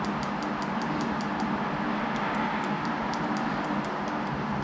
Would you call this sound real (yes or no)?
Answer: yes